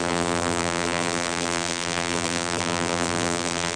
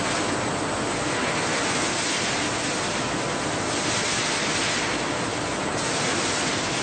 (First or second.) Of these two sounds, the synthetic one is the first